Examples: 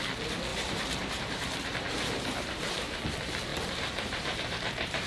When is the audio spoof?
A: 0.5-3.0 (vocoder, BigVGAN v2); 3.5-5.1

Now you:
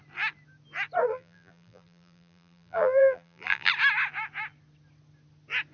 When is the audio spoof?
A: 1.1-3.7 (vocoder, BigVGAN v2)

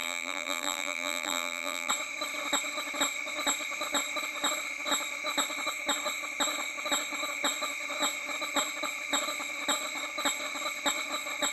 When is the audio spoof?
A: 0.0-1.9 (vocoder, BigVGAN v2)

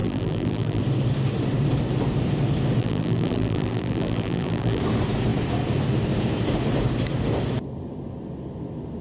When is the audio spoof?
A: 0.0-0.8 (vocoder, BigVGAN v2); 2.8-4.8

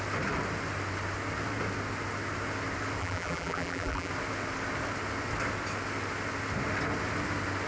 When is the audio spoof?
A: 3.0-4.1 (vocoder, BigVGAN v2)

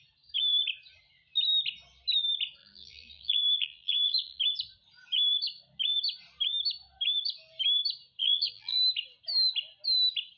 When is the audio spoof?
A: 2.6-4.4 (vocoder, BigVGAN v2); 8.2-8.8

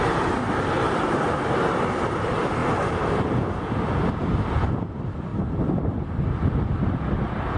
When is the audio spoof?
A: 0.0-2.6 (vocoder, BigVGAN v2); 4.7-5.3; 7.1-7.6

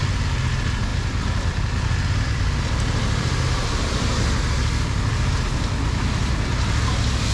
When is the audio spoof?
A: 0.9-4.4 (vocoder, BigVGAN v2)